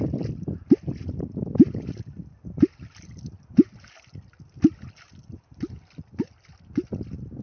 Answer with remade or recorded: recorded